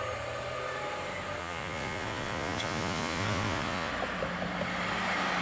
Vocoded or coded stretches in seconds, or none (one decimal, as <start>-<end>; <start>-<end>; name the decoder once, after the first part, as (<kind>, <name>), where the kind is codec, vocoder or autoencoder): 1.4-3.9 (vocoder, Vocos)